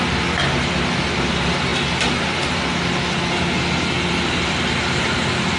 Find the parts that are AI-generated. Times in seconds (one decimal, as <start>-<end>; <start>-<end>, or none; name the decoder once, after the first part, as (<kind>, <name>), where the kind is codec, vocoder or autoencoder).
none

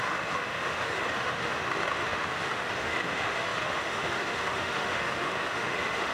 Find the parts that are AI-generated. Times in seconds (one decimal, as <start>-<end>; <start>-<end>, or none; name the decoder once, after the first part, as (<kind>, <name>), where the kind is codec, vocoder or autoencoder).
0.0-6.1 (autoencoder, DAC-VAE)